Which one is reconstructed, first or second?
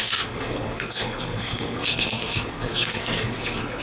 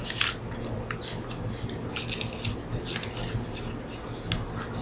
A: first